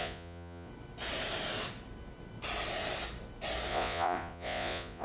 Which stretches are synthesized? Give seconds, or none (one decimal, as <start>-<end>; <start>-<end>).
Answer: 0.0-0.7; 3.7-5.0